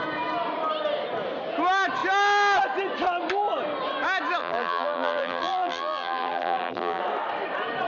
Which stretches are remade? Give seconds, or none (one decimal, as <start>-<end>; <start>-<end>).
4.4-7.0